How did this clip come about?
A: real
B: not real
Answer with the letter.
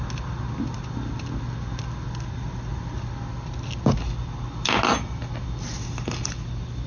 A